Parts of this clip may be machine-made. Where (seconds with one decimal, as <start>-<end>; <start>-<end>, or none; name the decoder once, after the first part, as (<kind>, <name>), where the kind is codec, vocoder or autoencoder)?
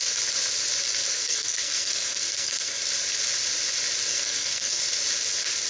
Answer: 1.1-2.8 (codec, SNAC); 4.1-4.8